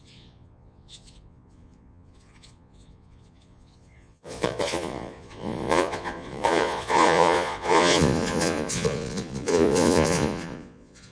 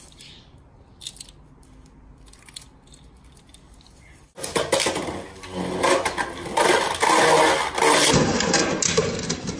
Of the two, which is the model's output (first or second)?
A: first